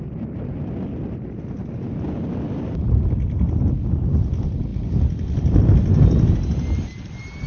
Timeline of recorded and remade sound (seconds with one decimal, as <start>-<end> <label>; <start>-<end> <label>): 0.0-7.5 recorded